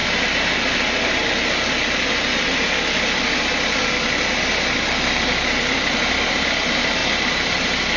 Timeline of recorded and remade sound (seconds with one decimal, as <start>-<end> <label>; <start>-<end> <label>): 0.0-8.0 recorded